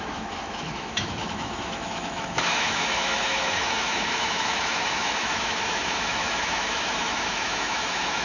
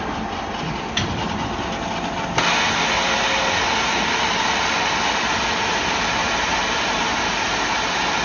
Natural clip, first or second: second